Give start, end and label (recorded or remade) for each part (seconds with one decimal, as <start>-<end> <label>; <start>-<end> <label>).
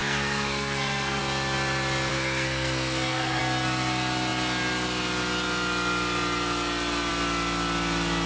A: 0.0-1.2 remade; 1.2-2.1 recorded; 2.1-3.4 remade; 3.4-8.3 recorded